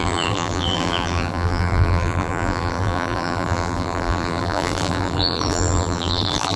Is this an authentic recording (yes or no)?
no